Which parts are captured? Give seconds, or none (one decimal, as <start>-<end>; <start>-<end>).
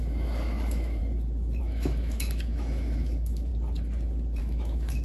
1.0-1.6; 3.5-4.4